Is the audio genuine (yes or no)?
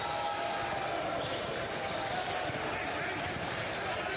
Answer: yes